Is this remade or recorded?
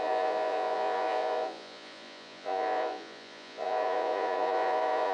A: remade